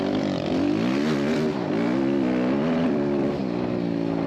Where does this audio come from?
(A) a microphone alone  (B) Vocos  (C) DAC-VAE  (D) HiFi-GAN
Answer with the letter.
A